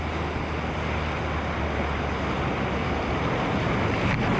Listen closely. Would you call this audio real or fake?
real